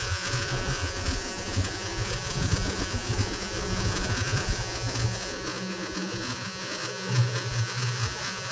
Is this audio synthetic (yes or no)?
yes